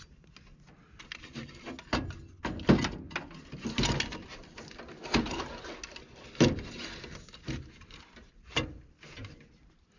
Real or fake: real